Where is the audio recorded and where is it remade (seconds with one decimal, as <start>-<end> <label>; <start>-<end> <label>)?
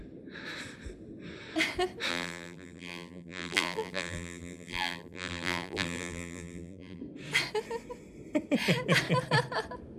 0.0-2.1 recorded; 2.1-7.0 remade; 7.0-10.0 recorded